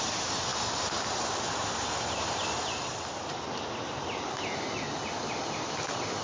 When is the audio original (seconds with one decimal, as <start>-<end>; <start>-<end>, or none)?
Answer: 0.0-6.2